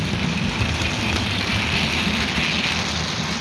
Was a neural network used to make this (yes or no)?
no